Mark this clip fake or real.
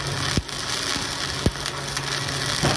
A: real